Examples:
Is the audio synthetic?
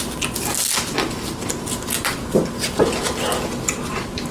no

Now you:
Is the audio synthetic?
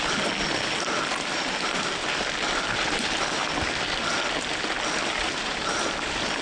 no